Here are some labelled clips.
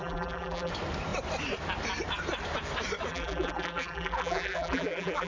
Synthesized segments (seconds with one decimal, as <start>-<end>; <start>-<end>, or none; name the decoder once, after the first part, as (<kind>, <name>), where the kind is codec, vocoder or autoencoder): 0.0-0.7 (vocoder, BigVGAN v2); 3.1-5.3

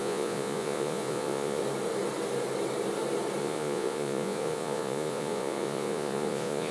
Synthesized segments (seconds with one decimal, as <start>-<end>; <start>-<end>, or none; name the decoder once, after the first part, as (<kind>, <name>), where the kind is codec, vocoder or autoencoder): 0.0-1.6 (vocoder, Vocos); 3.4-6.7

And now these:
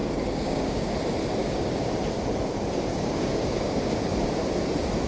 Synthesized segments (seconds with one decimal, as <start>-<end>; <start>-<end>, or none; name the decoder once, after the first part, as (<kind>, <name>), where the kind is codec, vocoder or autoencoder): 0.0-0.9 (codec, DAC); 1.4-1.9; 2.9-3.9

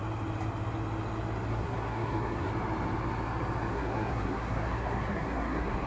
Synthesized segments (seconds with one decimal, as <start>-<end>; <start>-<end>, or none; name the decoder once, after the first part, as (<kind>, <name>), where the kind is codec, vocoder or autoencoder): 1.5-2.5 (codec, SNAC); 3.7-5.9